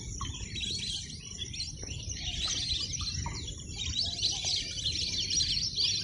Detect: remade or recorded recorded